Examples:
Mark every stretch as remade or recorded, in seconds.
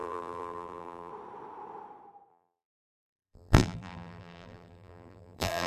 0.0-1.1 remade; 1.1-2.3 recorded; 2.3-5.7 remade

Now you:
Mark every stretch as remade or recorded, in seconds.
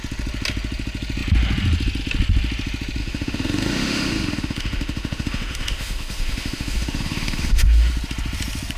0.0-3.0 recorded; 3.0-7.9 remade; 7.9-8.8 recorded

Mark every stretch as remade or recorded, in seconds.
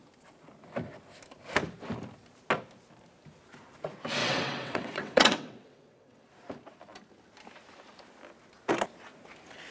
0.0-4.2 recorded; 4.2-6.3 remade; 6.3-9.7 recorded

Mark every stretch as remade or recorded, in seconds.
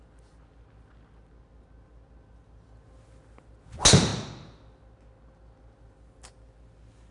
0.0-7.1 recorded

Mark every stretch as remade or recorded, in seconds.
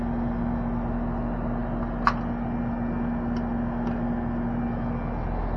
0.0-5.6 recorded